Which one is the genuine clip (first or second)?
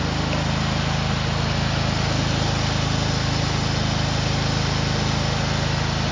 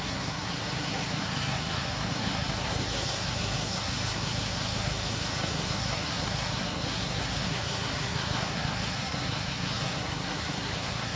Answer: first